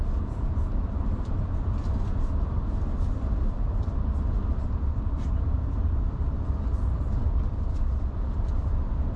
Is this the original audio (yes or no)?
no